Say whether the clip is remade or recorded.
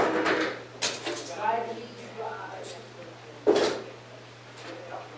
recorded